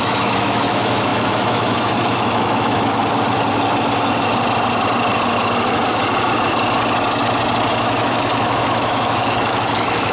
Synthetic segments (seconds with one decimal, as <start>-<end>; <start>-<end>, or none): 0.0-3.0; 7.8-10.1